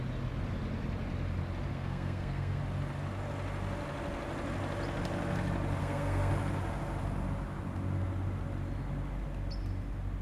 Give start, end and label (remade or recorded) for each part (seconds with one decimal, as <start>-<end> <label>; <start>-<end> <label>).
0.0-1.7 recorded; 1.7-2.6 remade; 2.6-5.8 recorded; 5.8-6.3 remade; 6.3-10.2 recorded

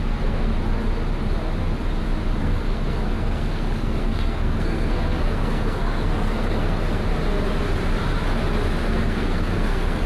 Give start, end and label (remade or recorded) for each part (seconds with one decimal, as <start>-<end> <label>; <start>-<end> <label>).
0.0-0.5 remade; 0.5-2.4 recorded; 2.4-7.0 remade; 7.0-8.9 recorded; 8.9-10.1 remade

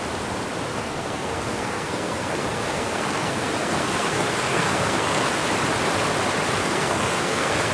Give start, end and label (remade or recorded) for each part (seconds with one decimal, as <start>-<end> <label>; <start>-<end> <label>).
0.0-0.7 recorded; 0.7-5.3 remade; 5.3-6.6 recorded; 6.6-7.7 remade

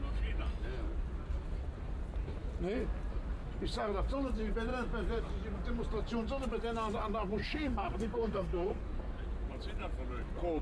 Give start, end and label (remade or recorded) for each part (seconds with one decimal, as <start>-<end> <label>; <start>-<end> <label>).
0.0-7.4 recorded; 7.4-8.8 remade; 8.8-10.6 recorded

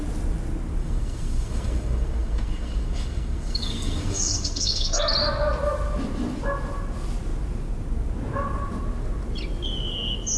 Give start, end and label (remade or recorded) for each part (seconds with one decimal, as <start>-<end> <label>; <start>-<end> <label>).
0.0-0.8 recorded; 0.8-5.0 remade; 5.0-10.4 recorded